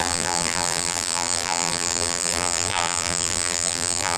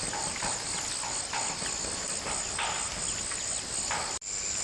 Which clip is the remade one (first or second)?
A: first